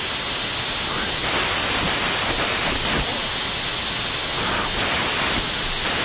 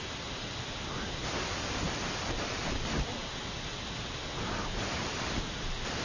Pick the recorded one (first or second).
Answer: first